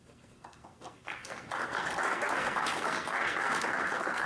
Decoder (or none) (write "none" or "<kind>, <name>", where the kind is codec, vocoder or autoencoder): codec, SNAC